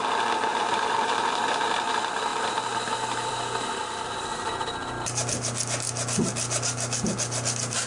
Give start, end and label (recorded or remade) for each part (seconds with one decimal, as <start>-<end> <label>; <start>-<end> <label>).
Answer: 0.0-0.5 recorded; 0.5-1.6 remade; 1.6-3.8 recorded; 3.8-4.5 remade; 4.5-7.9 recorded